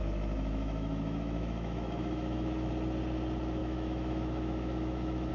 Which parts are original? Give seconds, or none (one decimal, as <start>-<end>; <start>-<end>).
2.7-3.6